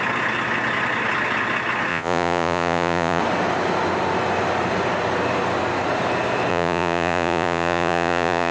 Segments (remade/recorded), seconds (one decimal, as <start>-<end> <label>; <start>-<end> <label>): 0.0-1.9 recorded; 1.9-3.2 remade; 3.2-6.5 recorded; 6.5-8.5 remade